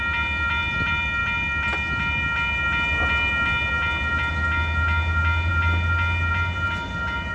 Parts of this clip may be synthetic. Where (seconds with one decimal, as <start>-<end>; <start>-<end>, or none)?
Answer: none